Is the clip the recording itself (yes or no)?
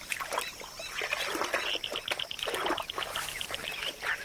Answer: yes